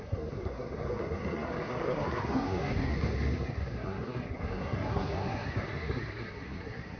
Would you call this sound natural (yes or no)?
no